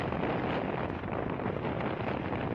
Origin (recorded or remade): recorded